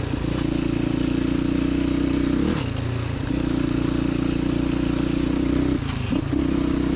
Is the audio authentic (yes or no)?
yes